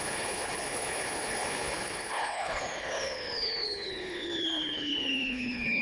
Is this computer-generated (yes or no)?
yes